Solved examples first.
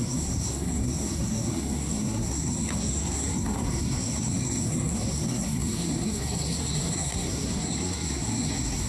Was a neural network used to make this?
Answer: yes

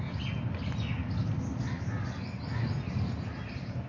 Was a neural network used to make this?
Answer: no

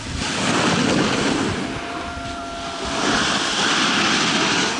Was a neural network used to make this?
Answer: no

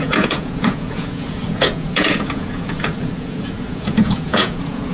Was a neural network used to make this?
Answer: yes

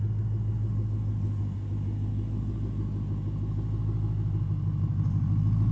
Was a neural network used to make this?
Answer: no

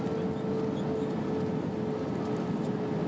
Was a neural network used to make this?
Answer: no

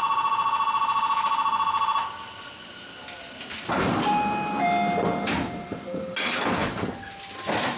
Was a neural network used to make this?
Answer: no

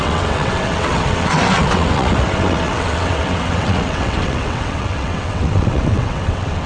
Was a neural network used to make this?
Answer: yes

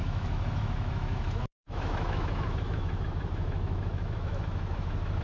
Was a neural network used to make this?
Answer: yes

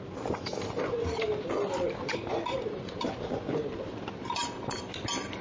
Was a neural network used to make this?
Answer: no